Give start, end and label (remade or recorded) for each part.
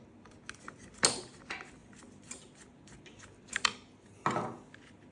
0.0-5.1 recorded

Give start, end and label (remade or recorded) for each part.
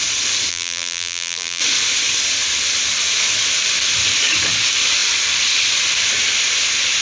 0.0-0.5 recorded; 0.5-1.6 remade; 1.6-7.0 recorded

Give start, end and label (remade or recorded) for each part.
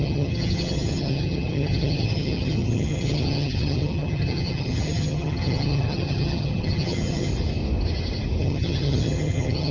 0.0-7.3 remade; 7.3-8.4 recorded; 8.4-9.7 remade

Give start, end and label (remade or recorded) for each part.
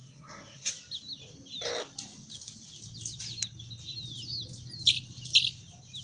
0.0-0.7 remade; 0.7-6.0 recorded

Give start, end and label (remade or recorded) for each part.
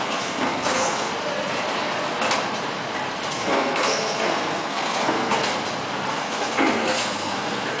0.0-1.1 remade; 1.1-3.3 recorded; 3.3-5.5 remade; 5.5-6.1 recorded; 6.1-7.8 remade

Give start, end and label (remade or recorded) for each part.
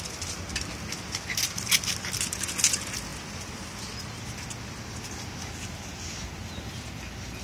0.0-7.4 recorded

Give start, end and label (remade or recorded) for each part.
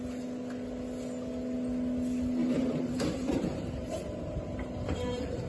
0.0-2.4 recorded; 2.4-5.5 remade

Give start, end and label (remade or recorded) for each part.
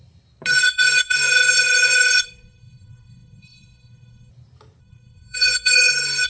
0.0-0.5 recorded; 0.5-4.3 remade; 4.3-4.8 recorded; 4.8-6.3 remade